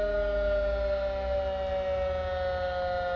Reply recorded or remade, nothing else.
recorded